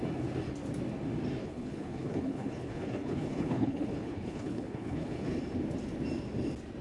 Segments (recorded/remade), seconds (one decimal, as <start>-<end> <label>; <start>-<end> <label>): 0.0-1.4 recorded; 1.4-5.4 remade; 5.4-6.8 recorded